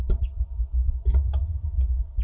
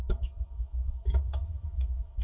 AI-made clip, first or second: second